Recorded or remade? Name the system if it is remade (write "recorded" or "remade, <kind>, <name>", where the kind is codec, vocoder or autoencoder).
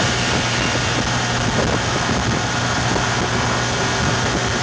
recorded